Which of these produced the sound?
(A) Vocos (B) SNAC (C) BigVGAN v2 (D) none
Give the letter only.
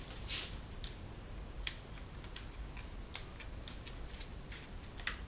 D